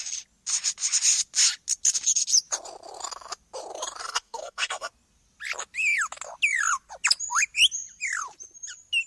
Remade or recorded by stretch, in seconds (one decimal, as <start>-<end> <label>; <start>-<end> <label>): 0.0-4.0 recorded; 4.0-4.9 remade; 4.9-9.1 recorded